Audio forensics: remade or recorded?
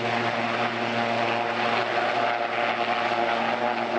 recorded